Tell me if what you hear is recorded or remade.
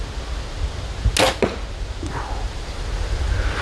recorded